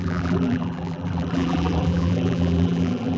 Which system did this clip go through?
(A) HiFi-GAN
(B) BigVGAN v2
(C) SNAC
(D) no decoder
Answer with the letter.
B